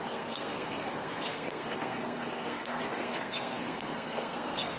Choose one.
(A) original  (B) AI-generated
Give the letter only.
B